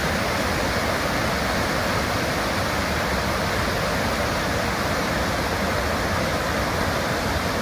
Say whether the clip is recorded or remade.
recorded